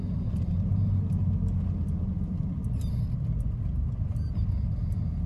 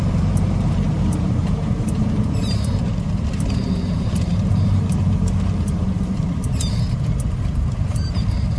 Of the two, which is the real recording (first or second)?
first